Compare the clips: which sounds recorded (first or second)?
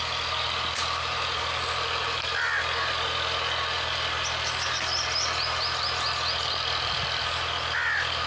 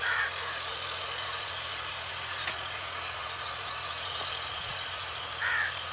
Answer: first